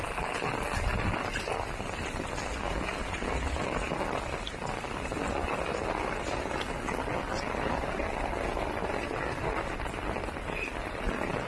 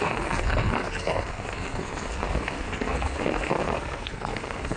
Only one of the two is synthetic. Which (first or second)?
second